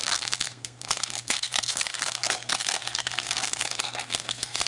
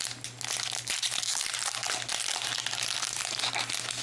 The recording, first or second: second